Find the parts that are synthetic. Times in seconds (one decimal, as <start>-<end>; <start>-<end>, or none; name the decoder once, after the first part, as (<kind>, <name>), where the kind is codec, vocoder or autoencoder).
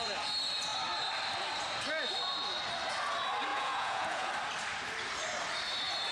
3.5-4.3 (vocoder, Vocos)